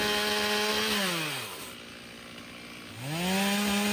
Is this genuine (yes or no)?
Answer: yes